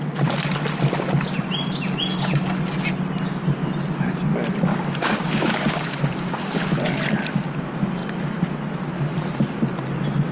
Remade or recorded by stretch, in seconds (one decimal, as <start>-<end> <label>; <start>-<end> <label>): 0.0-4.7 recorded; 4.7-6.6 remade; 6.6-10.3 recorded